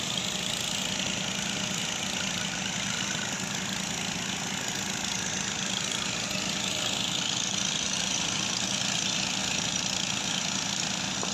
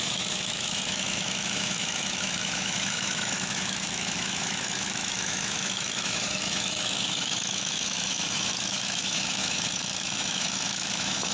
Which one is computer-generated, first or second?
second